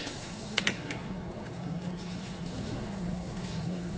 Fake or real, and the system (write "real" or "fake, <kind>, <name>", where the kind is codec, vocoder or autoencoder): fake, codec, SNAC